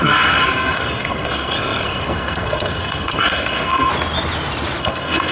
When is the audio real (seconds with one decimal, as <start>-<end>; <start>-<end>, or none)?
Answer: 3.9-4.8